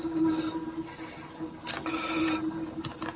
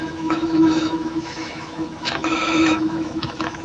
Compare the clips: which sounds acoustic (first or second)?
first